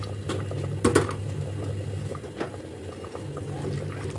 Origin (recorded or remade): recorded